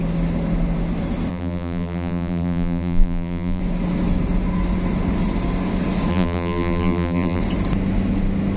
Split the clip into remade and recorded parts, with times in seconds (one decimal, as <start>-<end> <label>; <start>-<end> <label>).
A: 0.0-1.3 recorded; 1.3-3.6 remade; 3.6-6.1 recorded; 6.1-7.4 remade; 7.4-8.6 recorded